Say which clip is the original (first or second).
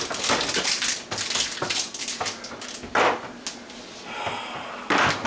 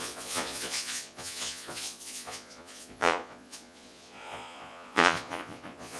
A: first